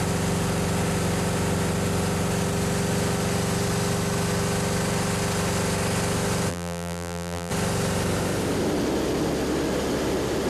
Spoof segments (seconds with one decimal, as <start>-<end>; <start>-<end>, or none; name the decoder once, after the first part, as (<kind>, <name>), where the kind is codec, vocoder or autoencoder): 6.5-7.5 (vocoder, BigVGAN v2)